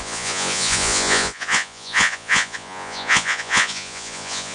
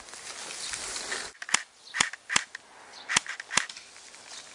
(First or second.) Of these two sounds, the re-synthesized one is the first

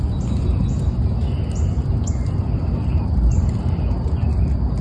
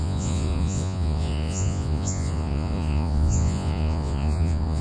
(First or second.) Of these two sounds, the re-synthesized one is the second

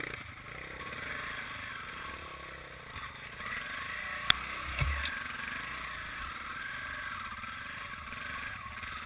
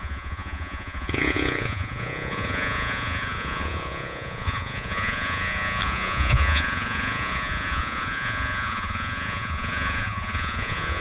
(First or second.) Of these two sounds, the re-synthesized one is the second